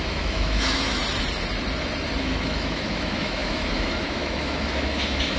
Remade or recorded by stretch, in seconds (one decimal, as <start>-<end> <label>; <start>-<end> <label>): 0.0-1.0 remade; 1.0-2.2 recorded; 2.2-5.4 remade